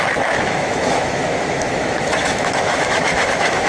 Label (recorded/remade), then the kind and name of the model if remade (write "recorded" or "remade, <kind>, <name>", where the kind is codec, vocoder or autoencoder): remade, autoencoder, DAC-VAE